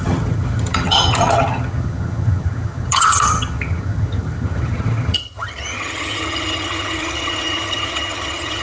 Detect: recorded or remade remade